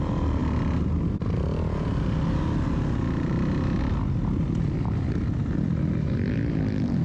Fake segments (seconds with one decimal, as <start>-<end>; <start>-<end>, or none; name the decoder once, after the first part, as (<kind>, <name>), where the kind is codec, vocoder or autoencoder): none